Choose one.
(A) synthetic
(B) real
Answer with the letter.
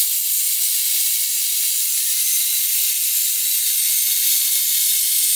B